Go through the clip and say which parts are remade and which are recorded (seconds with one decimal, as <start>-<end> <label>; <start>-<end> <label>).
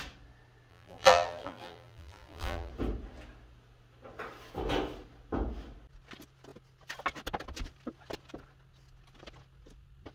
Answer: 0.0-0.7 recorded; 0.7-2.7 remade; 2.7-10.1 recorded